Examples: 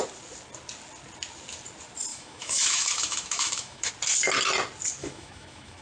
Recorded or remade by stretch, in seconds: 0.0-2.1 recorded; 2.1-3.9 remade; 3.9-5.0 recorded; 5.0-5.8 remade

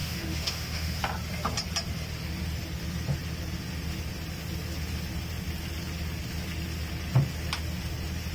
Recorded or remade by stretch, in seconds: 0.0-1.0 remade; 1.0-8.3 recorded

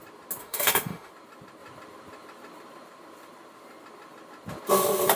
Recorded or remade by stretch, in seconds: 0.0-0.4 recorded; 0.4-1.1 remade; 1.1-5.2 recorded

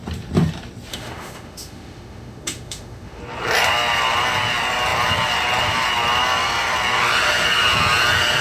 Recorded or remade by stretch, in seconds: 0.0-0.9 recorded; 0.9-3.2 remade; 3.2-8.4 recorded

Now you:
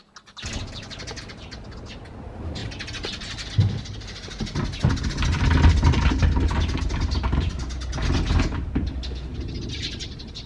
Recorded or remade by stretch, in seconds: 0.0-10.5 recorded

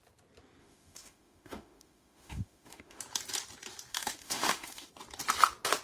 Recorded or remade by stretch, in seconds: 0.0-0.6 recorded; 0.6-3.0 remade; 3.0-3.9 recorded; 3.9-4.9 remade; 4.9-5.8 recorded

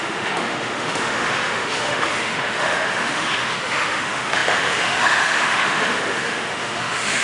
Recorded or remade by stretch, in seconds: 0.0-7.2 remade